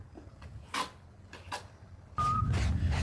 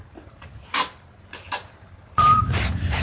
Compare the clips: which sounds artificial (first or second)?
second